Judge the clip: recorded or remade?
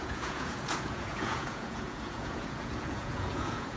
remade